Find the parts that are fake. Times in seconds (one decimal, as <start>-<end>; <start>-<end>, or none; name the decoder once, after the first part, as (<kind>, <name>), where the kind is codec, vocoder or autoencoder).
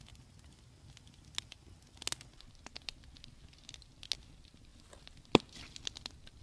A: none